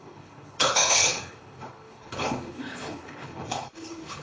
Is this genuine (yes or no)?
no